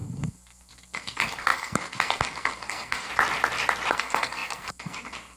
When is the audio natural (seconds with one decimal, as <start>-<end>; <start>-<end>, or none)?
3.1-3.9